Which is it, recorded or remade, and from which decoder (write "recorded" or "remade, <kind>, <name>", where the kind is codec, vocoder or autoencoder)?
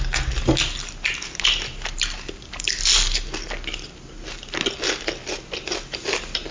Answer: recorded